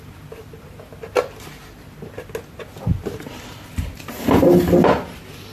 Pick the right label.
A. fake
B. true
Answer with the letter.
B